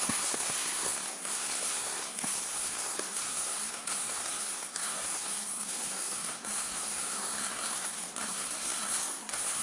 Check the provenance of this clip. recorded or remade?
remade